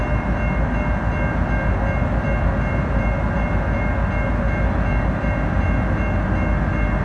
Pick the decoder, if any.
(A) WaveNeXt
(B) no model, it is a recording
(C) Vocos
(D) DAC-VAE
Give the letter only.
B